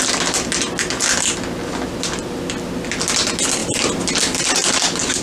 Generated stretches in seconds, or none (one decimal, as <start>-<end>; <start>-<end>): none